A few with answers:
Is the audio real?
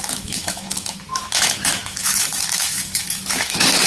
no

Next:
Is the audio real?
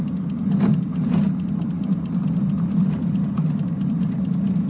yes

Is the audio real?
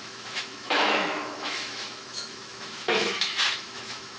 no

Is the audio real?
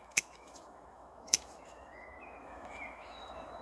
no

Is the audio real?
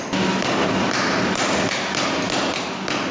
yes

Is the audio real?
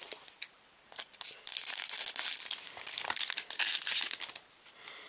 yes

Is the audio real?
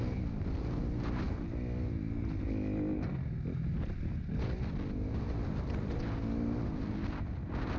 yes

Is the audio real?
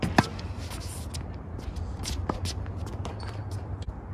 yes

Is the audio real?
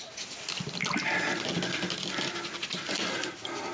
yes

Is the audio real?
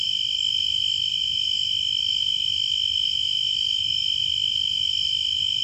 yes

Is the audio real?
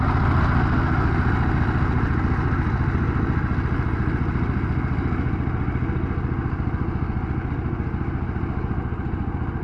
yes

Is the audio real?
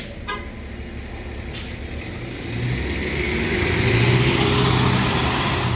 yes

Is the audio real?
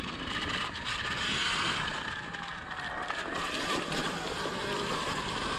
yes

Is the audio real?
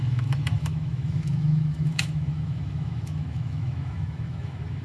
no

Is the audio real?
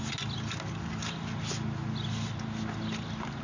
yes